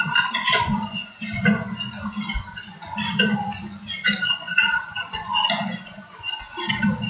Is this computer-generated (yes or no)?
yes